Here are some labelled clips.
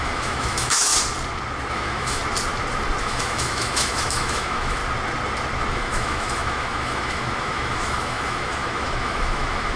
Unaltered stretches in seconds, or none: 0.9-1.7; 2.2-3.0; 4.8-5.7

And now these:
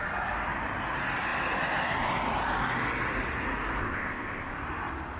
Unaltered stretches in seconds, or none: 0.0-3.8; 4.5-5.2